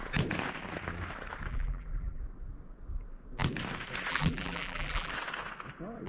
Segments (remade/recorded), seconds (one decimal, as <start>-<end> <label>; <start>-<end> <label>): 0.0-1.5 recorded; 1.5-2.2 remade; 2.2-4.1 recorded; 4.1-5.1 remade; 5.1-6.1 recorded